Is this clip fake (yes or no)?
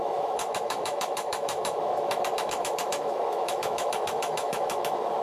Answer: yes